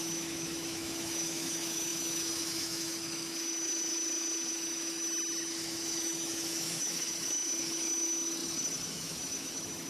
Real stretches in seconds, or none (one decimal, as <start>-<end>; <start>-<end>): none